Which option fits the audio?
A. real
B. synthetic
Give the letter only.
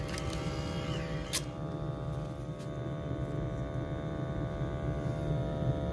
A